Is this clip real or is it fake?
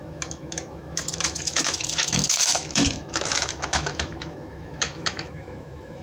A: fake